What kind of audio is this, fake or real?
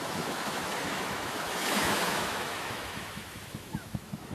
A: fake